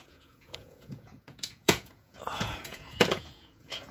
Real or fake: fake